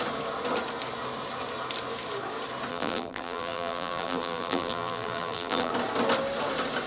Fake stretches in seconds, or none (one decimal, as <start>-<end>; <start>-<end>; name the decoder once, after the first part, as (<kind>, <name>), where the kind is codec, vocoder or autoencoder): 2.7-5.7 (vocoder, BigVGAN v2)